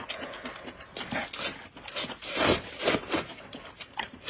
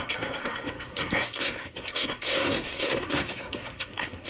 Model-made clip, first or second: second